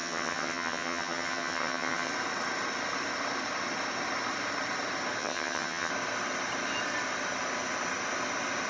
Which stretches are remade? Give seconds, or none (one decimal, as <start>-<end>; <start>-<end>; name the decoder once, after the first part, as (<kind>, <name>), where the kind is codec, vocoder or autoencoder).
0.0-2.1 (vocoder, HiFi-GAN); 5.2-5.9